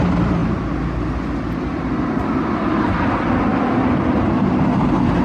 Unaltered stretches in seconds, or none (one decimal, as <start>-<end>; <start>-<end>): 0.0-5.2